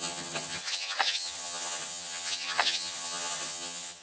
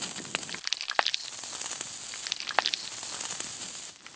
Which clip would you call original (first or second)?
second